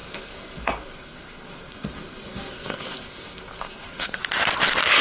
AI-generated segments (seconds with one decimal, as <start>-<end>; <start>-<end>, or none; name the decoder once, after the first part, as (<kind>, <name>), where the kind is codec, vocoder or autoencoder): 0.0-4.2 (codec, SNAC)